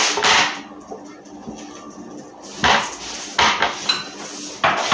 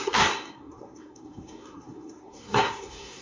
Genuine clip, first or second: first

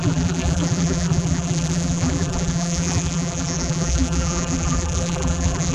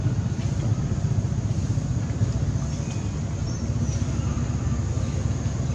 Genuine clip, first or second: second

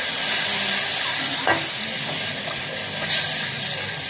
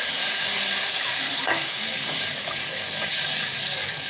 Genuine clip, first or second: first